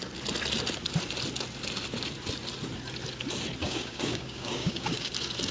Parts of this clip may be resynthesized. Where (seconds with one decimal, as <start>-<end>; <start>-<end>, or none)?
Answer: 3.6-5.1